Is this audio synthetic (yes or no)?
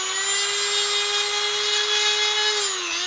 no